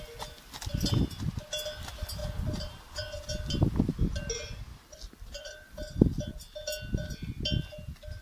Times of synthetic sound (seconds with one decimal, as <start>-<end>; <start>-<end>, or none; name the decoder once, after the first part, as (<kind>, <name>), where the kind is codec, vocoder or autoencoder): 2.2-3.3 (vocoder, BigVGAN v2); 4.7-6.3